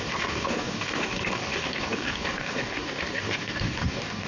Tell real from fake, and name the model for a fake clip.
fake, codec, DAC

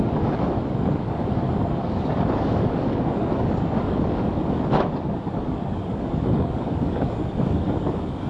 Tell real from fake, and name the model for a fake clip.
fake, codec, DAC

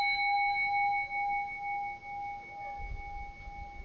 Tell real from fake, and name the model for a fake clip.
real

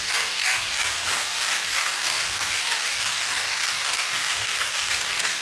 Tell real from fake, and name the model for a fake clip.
fake, codec, DAC